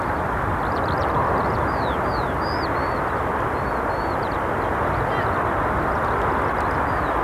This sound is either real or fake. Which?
real